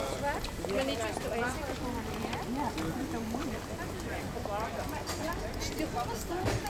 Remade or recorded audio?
recorded